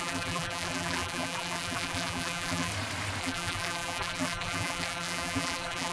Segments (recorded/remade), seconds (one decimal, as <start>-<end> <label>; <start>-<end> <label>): 0.0-2.7 remade; 2.7-3.2 recorded; 3.2-5.9 remade